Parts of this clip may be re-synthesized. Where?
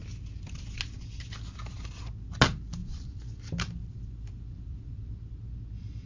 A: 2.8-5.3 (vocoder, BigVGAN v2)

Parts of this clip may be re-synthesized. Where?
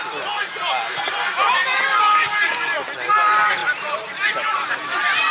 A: 3.6-4.7 (vocoder, BigVGAN v2)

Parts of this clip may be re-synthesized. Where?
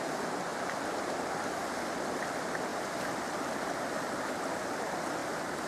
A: 2.7-3.4 (vocoder, BigVGAN v2); 5.2-5.7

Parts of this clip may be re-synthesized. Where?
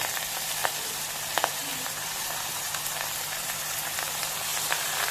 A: 0.6-1.1 (vocoder, BigVGAN v2); 1.5-2.6; 4.5-5.1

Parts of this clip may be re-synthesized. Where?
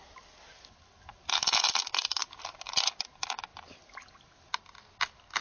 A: 2.2-3.0 (vocoder, BigVGAN v2)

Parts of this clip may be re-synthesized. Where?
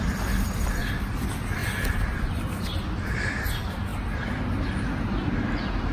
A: none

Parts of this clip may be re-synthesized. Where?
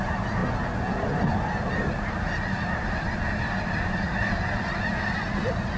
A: 0.0-0.4 (vocoder, BigVGAN v2); 1.7-5.8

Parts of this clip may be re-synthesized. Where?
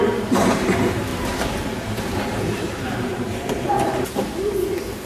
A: 1.1-4.2 (vocoder, BigVGAN v2)